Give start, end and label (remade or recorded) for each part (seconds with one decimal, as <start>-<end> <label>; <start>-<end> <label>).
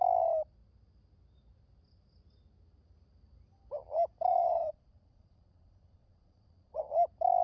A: 0.0-4.3 recorded; 4.3-6.9 remade; 6.9-7.4 recorded